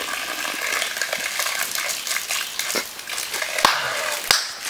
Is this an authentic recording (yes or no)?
yes